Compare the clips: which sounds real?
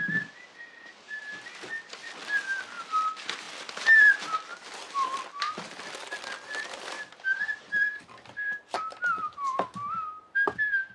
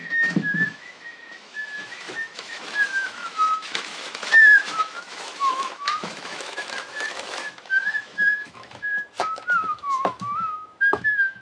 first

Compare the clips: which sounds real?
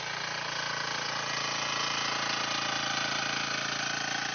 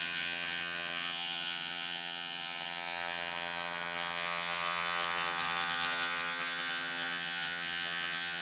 first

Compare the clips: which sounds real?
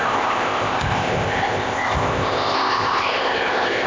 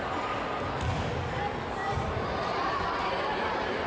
second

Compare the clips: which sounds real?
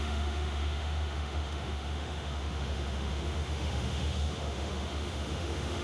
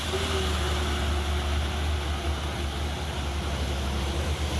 second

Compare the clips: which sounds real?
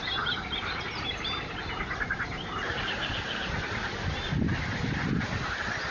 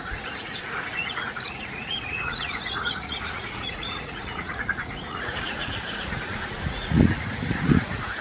first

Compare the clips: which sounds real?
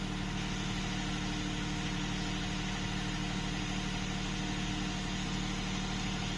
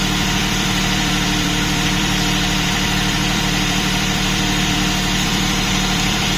first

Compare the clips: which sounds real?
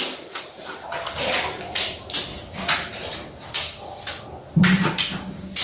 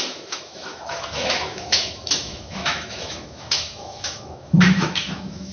first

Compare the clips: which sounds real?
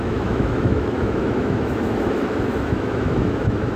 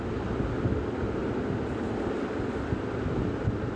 second